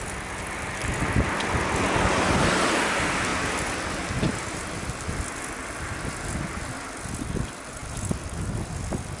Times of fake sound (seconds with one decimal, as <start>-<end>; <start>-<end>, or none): none